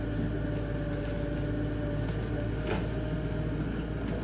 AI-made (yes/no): no